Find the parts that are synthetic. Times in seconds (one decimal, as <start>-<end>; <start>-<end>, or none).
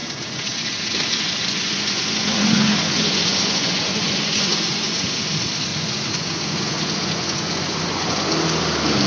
0.0-5.2; 5.7-8.3